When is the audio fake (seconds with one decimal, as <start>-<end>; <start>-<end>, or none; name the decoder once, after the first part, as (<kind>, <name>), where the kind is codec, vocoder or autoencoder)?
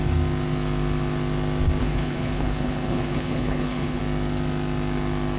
1.8-4.0 (codec, HILCodec)